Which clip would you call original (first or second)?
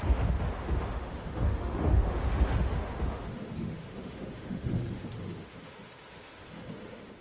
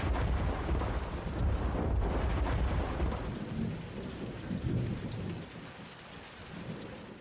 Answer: second